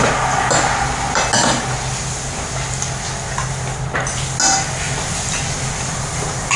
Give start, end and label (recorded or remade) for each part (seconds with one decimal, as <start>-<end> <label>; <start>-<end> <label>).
0.0-6.6 recorded